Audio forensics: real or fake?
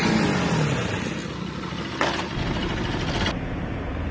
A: real